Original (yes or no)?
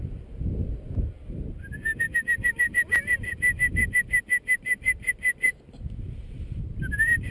no